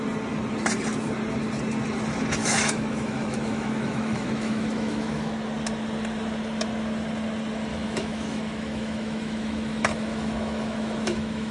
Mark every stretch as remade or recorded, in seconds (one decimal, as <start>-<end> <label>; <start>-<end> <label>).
0.0-2.4 recorded; 2.4-5.3 remade; 5.3-7.7 recorded; 7.7-11.5 remade